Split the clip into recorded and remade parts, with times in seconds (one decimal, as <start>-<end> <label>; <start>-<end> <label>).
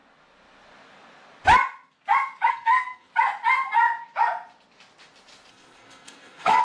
0.0-2.5 recorded; 2.5-3.1 remade; 3.1-5.5 recorded; 5.5-6.6 remade